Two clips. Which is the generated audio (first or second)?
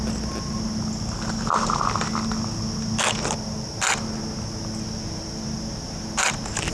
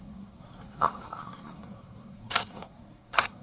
second